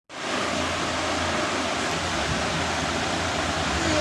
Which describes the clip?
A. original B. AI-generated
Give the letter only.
A